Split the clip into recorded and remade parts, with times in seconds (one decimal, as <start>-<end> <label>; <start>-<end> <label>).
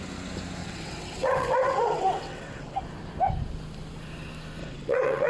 0.0-0.6 recorded; 0.6-2.8 remade; 2.8-4.6 recorded; 4.6-5.3 remade